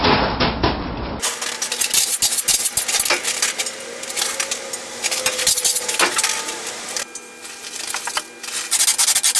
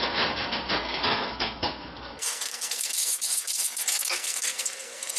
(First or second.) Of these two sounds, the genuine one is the first